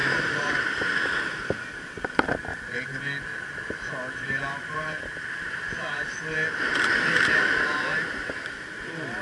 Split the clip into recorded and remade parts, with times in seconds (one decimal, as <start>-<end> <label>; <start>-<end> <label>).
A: 0.0-0.5 remade; 0.5-9.2 recorded